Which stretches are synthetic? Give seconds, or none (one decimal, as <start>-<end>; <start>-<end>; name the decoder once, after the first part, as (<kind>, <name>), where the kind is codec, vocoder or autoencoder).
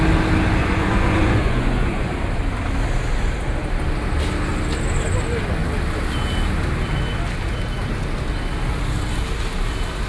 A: 0.6-2.1 (vocoder, Vocos)